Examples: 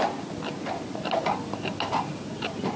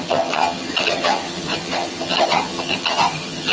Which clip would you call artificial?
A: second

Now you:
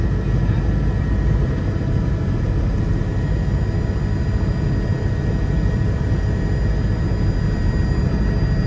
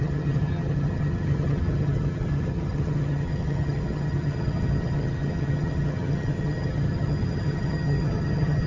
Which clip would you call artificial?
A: second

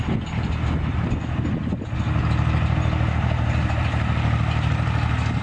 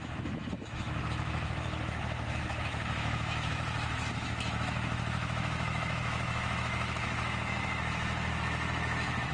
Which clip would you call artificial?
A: second